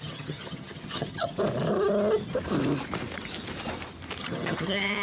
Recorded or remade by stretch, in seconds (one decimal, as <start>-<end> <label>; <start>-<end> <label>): 0.0-1.3 remade; 1.3-4.2 recorded; 4.2-5.0 remade